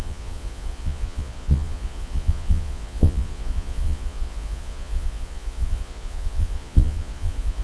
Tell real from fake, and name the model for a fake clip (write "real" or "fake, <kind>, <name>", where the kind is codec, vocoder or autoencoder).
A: fake, vocoder, Vocos